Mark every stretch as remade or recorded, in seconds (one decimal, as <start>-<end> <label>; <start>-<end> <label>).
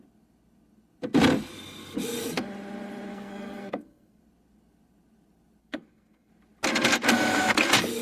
0.0-3.1 recorded; 3.1-4.2 remade; 4.2-5.6 recorded; 5.6-6.3 remade; 6.3-8.0 recorded